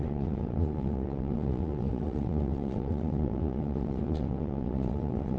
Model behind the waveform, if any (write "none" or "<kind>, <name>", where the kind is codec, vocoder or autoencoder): vocoder, WaveNeXt